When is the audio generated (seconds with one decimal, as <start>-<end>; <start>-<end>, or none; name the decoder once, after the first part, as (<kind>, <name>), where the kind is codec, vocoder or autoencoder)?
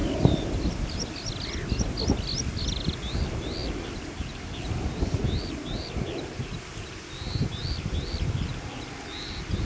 0.0-1.3 (vocoder, BigVGAN v2); 3.6-6.6; 7.6-8.5